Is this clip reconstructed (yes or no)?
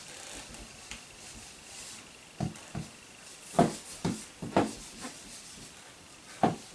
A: no